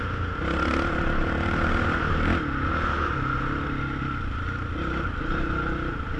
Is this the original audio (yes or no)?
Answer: yes